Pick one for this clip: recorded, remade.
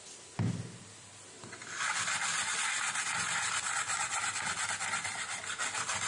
recorded